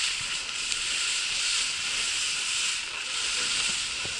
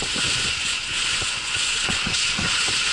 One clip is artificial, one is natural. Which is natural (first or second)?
first